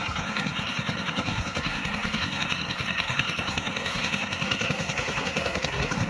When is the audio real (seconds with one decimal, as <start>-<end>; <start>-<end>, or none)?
none